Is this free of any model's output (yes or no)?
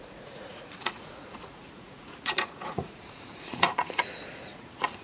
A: no